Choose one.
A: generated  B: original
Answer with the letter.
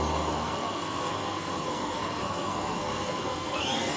A